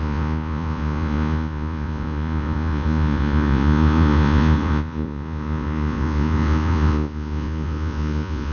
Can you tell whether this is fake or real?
fake